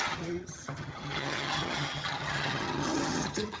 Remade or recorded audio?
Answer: remade